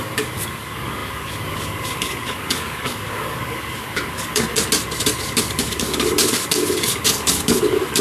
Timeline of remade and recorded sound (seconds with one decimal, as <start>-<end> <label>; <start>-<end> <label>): 0.0-4.5 remade; 4.5-5.2 recorded; 5.2-8.0 remade